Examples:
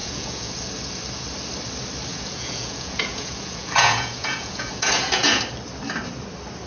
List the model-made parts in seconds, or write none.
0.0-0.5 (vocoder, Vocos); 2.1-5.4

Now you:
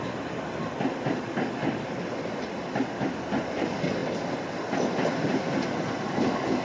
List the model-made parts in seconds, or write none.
none

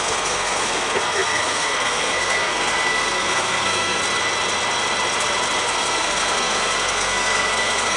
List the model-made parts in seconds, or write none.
0.0-4.0 (codec, SNAC); 5.6-8.0

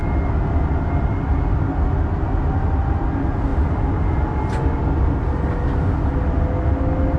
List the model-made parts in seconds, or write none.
none

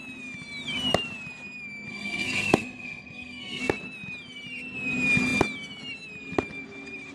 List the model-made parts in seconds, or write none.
1.9-3.6 (codec, SNAC)